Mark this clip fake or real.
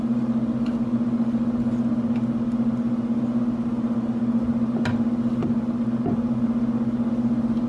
real